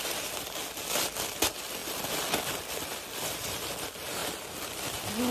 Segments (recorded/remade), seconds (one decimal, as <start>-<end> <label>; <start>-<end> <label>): 0.0-5.3 recorded